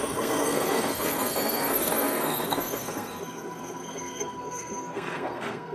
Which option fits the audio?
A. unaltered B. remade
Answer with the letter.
B